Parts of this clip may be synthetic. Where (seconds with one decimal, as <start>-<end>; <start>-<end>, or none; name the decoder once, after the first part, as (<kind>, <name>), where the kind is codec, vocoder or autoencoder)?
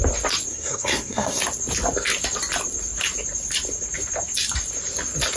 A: 0.5-1.4 (codec, SNAC)